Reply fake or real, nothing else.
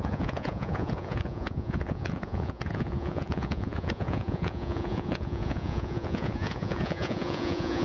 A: fake